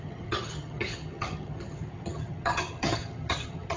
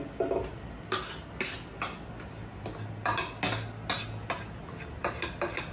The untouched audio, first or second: second